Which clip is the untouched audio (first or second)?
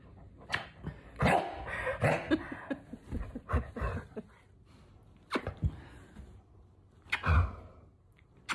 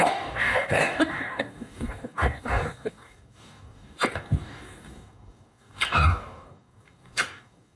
first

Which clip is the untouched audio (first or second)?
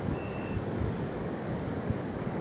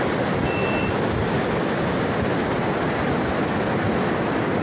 second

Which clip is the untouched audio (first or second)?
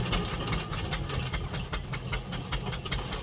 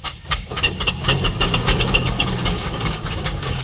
first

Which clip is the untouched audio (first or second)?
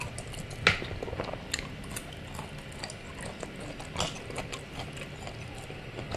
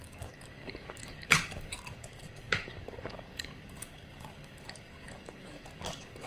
first